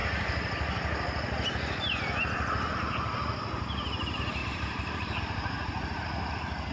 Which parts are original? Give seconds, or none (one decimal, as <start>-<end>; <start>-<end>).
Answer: 0.0-4.4; 5.2-6.7